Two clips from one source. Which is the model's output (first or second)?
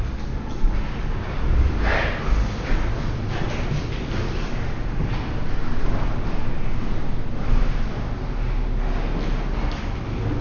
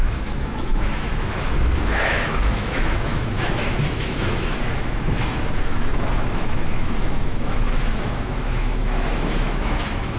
second